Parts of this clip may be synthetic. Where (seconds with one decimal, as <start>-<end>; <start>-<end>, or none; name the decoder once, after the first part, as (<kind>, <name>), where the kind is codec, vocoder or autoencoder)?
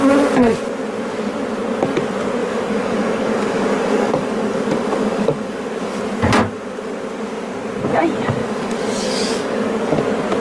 2.4-5.9 (codec, DAC); 8.4-10.0